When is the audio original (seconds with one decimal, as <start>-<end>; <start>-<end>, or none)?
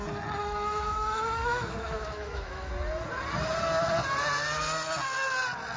0.0-0.4; 2.7-5.8